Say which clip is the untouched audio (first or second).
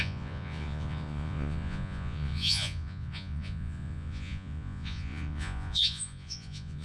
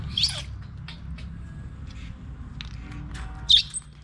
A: second